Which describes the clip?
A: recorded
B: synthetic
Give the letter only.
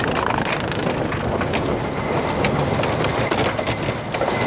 A